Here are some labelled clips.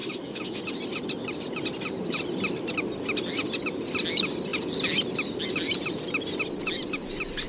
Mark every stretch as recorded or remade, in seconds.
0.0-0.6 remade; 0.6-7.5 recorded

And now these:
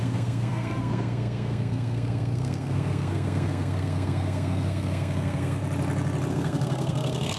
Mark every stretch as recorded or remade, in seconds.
0.0-5.6 remade; 5.6-6.3 recorded; 6.3-7.4 remade

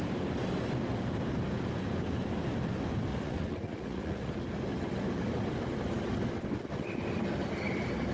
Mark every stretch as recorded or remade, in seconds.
0.0-3.1 recorded; 3.1-4.3 remade; 4.3-8.1 recorded

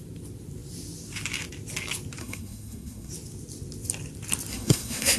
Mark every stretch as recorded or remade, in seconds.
0.0-2.2 recorded; 2.2-3.1 remade; 3.1-4.5 recorded; 4.5-5.2 remade

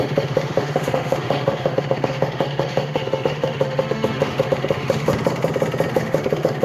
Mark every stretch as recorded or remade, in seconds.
0.0-5.1 remade; 5.1-5.9 recorded; 5.9-6.6 remade

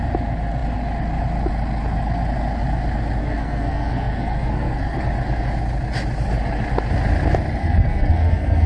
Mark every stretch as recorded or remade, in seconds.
0.0-3.2 recorded; 3.2-5.0 remade; 5.0-7.6 recorded; 7.6-8.7 remade